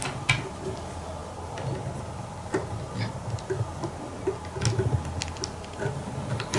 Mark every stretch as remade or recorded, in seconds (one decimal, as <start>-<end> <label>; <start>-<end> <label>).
0.0-6.6 recorded